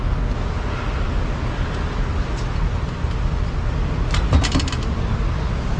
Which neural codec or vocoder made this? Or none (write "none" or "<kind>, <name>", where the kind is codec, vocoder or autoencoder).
none